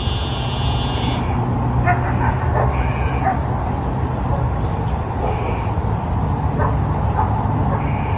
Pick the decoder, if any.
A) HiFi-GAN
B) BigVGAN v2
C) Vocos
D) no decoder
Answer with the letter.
D